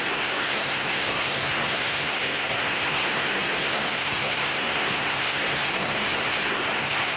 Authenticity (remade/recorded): remade